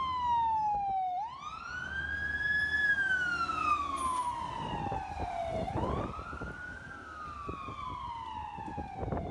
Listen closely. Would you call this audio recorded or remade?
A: recorded